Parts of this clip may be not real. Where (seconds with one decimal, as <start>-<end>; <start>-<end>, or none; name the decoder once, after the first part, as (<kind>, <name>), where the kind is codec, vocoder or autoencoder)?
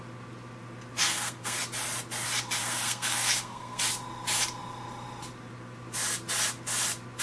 1.0-1.6 (codec, SNAC); 2.6-3.8